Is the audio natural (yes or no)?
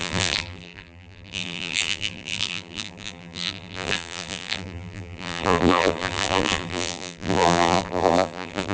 no